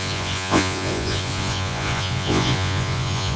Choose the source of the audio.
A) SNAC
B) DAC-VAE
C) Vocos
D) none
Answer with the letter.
C